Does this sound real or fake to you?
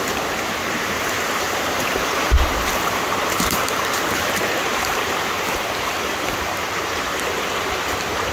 fake